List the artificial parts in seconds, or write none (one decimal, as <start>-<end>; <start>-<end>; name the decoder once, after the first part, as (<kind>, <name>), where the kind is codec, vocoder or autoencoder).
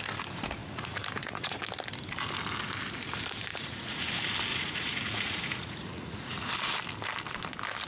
0.6-1.5 (vocoder, Vocos); 3.5-4.1; 4.5-6.5